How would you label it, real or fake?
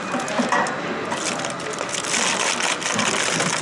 real